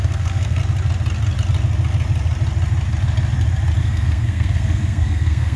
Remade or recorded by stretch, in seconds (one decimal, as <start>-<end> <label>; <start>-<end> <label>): 0.0-0.6 remade; 0.6-3.8 recorded; 3.8-5.6 remade